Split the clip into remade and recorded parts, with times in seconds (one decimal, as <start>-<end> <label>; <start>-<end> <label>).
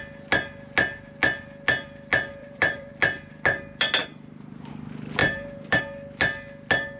0.0-2.4 recorded; 2.4-2.9 remade; 2.9-4.0 recorded; 4.0-4.7 remade; 4.7-5.2 recorded; 5.2-5.8 remade; 5.8-7.0 recorded